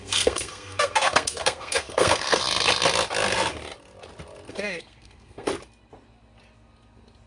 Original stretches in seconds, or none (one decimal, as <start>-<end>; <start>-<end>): 2.4-4.5; 5.5-7.3